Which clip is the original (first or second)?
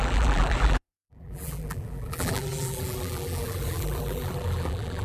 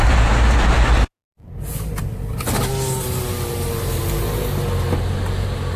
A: second